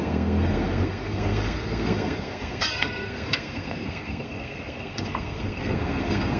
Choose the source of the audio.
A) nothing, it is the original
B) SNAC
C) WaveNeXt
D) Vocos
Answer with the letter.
B